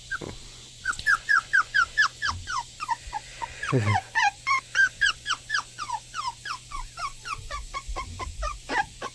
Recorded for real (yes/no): no